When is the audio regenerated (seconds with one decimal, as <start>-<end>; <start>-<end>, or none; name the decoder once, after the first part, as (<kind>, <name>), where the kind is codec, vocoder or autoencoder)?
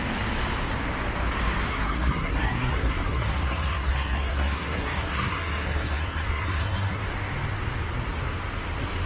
1.7-7.0 (codec, SNAC)